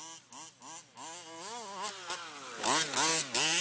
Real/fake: real